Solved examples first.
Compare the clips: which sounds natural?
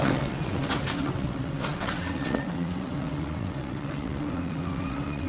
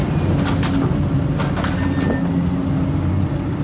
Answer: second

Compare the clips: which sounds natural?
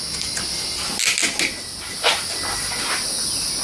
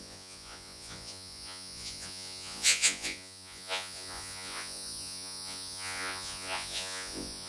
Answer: first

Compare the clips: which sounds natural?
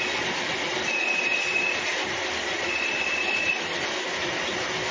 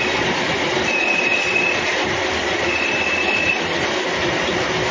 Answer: first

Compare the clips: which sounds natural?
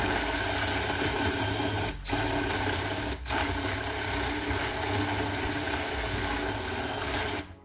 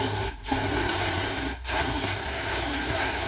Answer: first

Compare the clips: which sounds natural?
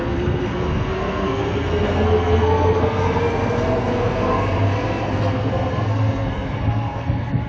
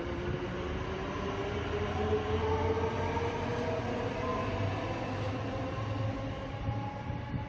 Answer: second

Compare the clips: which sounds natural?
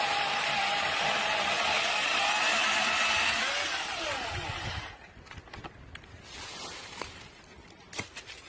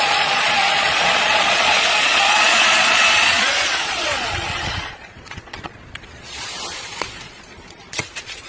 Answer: first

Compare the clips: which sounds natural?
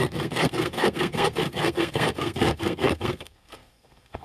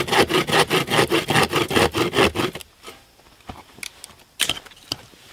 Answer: second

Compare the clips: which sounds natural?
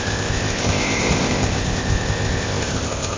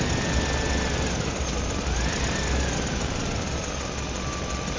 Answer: second